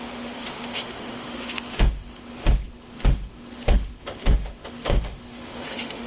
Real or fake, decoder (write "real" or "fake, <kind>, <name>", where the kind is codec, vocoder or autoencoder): fake, autoencoder, DAC-VAE